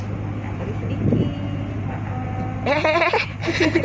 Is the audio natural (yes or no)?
yes